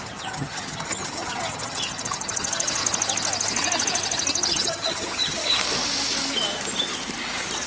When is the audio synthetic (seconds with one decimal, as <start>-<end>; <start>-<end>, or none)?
0.0-2.8; 4.5-5.6